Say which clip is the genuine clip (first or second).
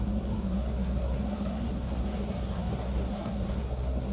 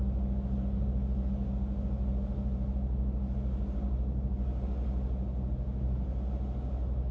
second